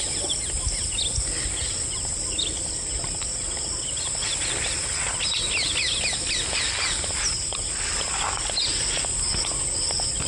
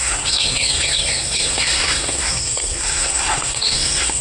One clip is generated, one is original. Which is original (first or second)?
first